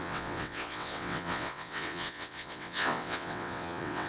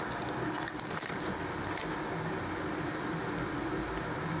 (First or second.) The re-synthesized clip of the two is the first